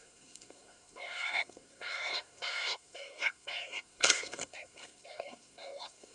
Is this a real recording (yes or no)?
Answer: no